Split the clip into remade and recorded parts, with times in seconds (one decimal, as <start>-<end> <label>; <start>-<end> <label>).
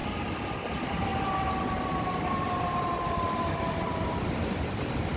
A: 0.0-0.7 recorded; 0.7-1.1 remade; 1.1-4.1 recorded; 4.1-5.2 remade